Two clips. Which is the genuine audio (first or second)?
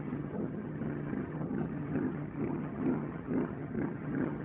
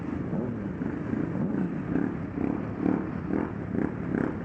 second